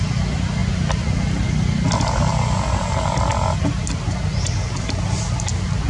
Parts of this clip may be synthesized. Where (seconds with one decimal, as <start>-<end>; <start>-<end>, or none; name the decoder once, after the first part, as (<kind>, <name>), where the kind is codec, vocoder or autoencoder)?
none